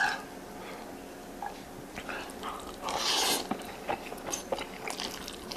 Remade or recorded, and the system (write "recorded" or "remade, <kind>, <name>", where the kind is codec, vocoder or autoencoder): recorded